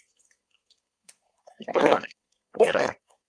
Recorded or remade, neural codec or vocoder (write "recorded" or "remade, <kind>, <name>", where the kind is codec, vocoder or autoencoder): remade, codec, SNAC